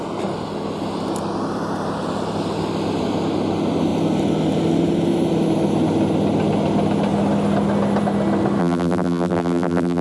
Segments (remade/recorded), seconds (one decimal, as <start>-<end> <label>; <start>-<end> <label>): 0.0-8.6 recorded; 8.6-10.0 remade